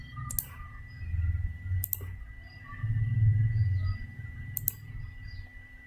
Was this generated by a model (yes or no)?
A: no